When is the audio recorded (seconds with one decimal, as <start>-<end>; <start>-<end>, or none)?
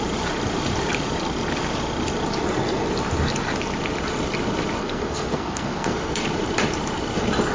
0.0-4.8; 6.2-7.5